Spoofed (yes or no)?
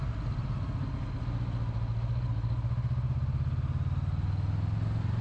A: no